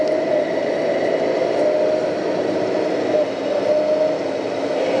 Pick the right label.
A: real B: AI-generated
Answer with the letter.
A